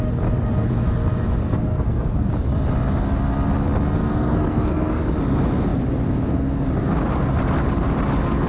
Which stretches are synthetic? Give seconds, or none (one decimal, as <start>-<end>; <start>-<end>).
1.4-2.3; 4.0-5.0